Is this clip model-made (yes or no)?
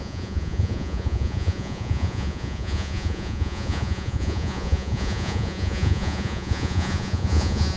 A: yes